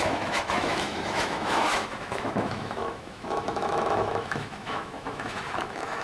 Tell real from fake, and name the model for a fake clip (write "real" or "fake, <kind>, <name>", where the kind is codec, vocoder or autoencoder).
fake, autoencoder, DAC-VAE